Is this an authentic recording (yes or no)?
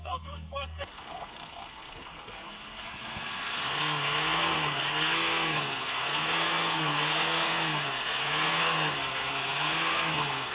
no